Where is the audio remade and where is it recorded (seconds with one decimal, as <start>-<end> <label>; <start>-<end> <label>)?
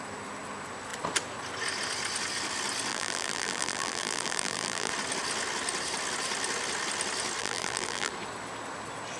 0.0-2.9 recorded; 2.9-4.9 remade; 4.9-7.4 recorded; 7.4-8.1 remade; 8.1-9.2 recorded